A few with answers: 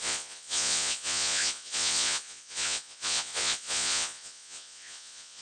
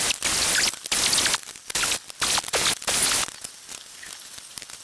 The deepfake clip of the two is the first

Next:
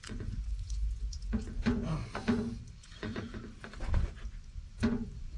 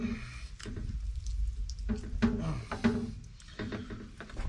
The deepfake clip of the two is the first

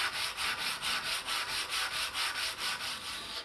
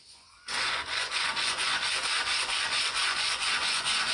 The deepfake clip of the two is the second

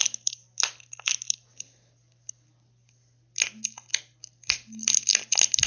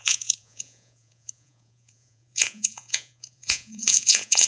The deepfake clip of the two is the second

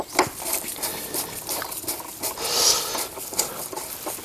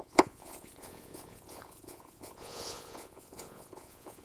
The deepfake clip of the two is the second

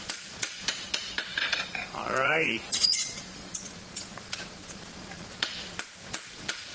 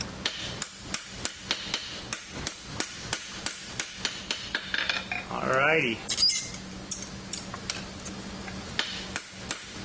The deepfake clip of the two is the first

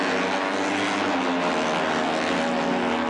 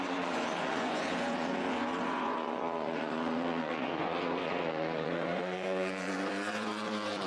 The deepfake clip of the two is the second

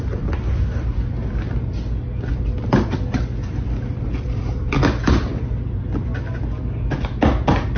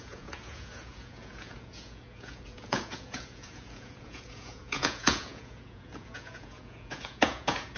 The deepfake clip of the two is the second